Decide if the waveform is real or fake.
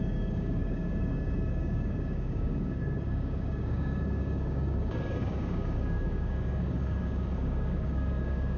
fake